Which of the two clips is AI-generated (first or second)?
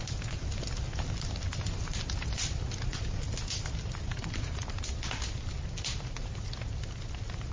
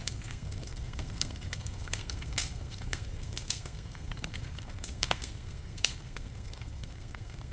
second